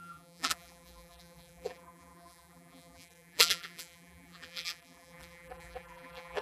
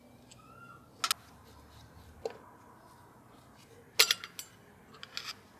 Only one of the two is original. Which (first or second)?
second